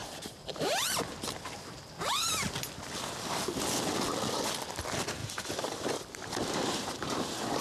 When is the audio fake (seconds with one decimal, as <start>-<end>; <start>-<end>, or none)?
0.0-1.4; 5.2-7.6